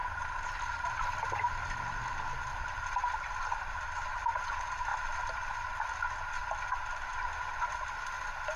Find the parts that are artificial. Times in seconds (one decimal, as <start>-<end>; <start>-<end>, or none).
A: 0.0-2.0; 2.5-3.3